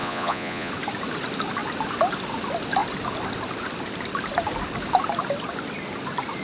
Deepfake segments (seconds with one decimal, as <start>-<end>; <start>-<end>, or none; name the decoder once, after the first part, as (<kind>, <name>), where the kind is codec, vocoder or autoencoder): 0.0-0.7 (vocoder, Vocos)